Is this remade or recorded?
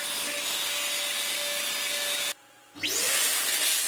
recorded